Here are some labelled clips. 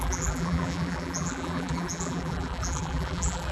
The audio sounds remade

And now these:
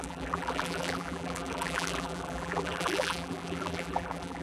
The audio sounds remade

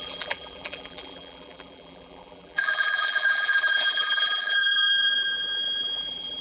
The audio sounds remade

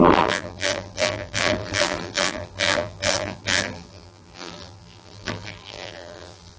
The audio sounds remade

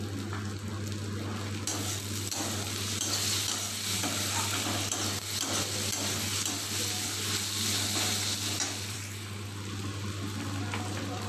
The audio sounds remade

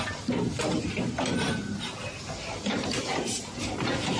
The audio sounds recorded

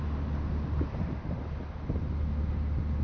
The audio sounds recorded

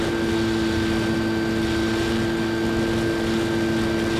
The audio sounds recorded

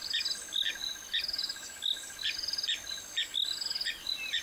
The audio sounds recorded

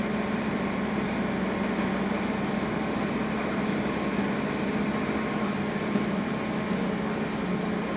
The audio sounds recorded